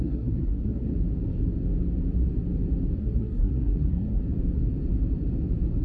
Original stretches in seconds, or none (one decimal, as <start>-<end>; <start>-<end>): 0.9-3.0; 4.2-5.8